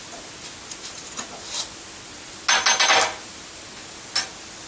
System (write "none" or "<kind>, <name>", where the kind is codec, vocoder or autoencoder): none